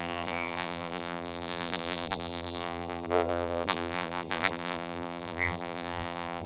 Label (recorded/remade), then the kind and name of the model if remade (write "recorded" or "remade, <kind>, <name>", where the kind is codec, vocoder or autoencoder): remade, vocoder, BigVGAN v2